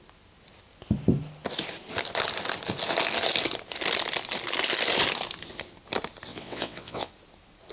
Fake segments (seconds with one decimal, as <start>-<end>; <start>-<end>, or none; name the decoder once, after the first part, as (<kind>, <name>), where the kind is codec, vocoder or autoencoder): 6.3-7.1 (vocoder, WaveNeXt)